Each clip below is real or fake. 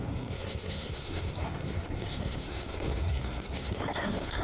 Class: fake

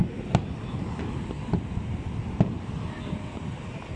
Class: real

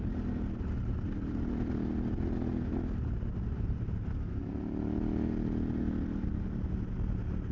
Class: real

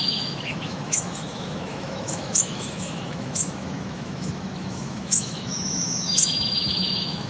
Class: fake